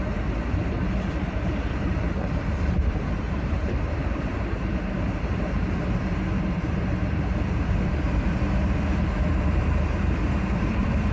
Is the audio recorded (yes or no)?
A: no